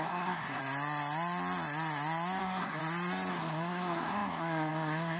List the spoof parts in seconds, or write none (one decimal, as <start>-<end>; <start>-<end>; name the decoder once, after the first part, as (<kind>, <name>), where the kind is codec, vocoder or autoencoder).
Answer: 0.0-0.6 (codec, SNAC); 2.4-2.8; 3.3-5.2